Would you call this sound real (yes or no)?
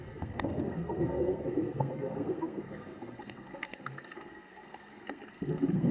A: no